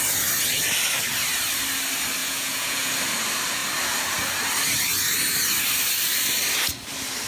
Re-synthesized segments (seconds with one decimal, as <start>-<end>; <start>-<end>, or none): 2.2-2.9